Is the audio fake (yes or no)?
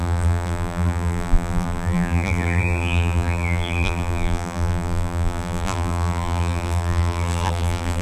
yes